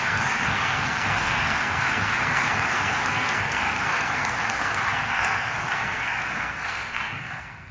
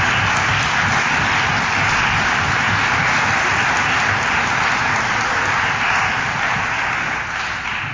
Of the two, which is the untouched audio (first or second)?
second